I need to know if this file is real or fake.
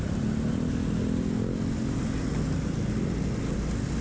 real